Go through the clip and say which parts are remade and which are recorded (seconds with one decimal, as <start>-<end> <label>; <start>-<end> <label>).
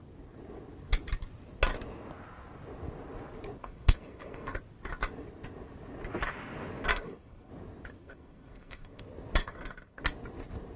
0.0-3.6 recorded; 3.6-4.6 remade; 4.6-6.9 recorded; 6.9-7.5 remade; 7.5-8.0 recorded; 8.0-9.0 remade; 9.0-9.4 recorded; 9.4-10.0 remade; 10.0-10.8 recorded